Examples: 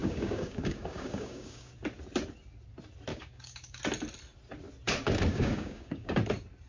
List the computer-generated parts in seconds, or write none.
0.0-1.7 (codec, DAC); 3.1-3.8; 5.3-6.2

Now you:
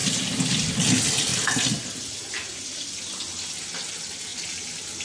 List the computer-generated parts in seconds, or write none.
none

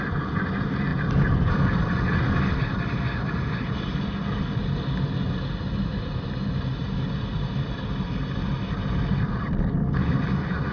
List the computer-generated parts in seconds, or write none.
none

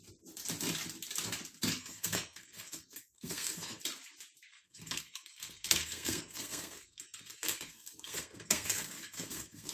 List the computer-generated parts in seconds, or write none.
1.8-3.8 (codec, SNAC); 4.5-9.7

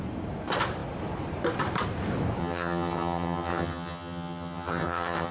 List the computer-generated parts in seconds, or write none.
2.4-5.3 (vocoder, HiFi-GAN)